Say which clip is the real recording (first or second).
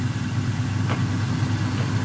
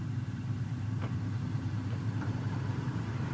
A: first